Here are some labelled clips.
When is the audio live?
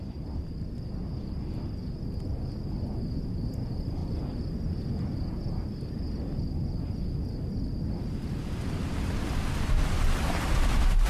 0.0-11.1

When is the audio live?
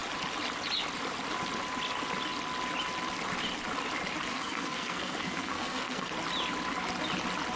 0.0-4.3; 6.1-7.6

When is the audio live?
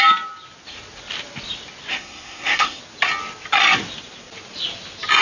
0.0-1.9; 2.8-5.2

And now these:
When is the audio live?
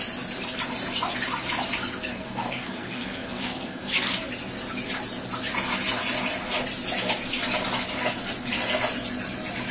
0.0-2.1; 4.3-9.7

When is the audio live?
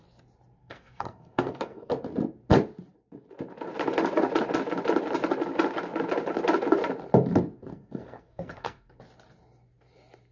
0.0-0.6; 1.9-7.7; 9.0-10.3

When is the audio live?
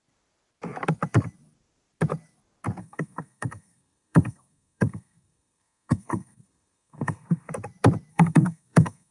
0.0-2.8; 7.5-8.1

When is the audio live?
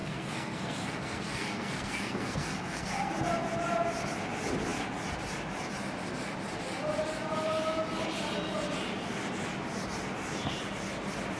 3.1-11.4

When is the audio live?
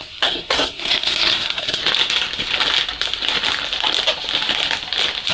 1.8-5.3